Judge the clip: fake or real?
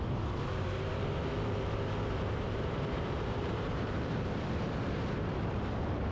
fake